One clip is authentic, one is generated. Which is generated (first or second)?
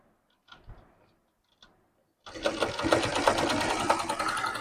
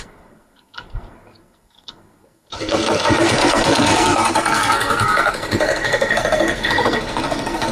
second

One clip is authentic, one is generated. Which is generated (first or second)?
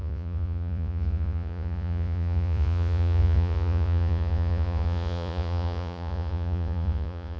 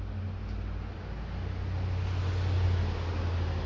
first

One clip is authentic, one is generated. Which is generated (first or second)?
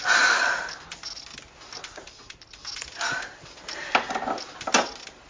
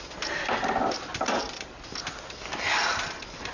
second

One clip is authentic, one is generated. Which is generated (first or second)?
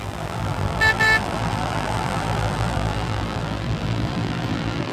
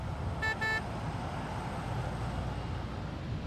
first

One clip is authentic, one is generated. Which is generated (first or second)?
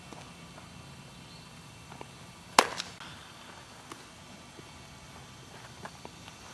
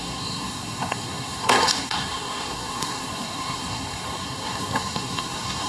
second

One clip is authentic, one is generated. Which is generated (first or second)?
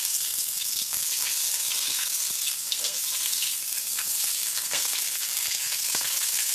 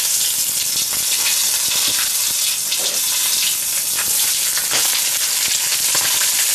first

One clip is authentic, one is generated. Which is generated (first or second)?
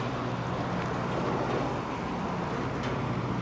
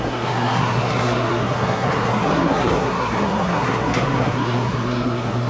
second